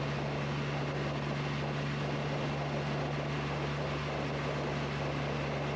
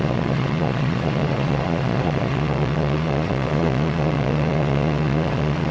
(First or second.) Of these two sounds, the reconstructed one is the second